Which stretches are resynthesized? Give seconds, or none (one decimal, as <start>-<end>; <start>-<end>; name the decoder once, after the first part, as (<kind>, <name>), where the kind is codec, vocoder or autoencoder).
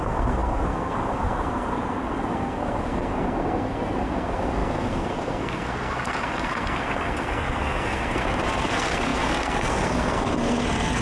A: 0.0-11.0 (codec, SNAC)